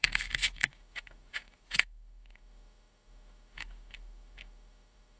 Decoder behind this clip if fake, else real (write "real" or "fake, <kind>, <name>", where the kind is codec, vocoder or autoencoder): fake, autoencoder, DAC-VAE